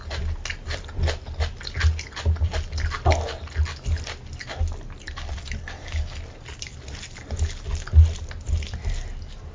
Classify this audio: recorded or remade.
recorded